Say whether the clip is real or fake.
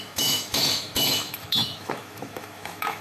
fake